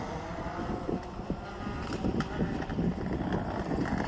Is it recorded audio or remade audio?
recorded